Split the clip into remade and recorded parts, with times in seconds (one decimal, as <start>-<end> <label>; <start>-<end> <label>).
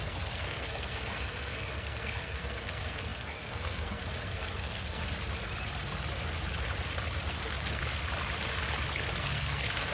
0.0-5.0 remade; 5.0-7.3 recorded; 7.3-7.8 remade; 7.8-9.2 recorded; 9.2-9.9 remade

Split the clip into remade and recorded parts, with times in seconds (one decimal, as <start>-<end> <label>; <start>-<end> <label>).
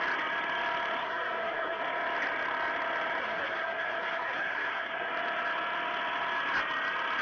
0.0-1.0 recorded; 1.0-1.8 remade; 1.8-3.2 recorded; 3.2-5.1 remade; 5.1-7.2 recorded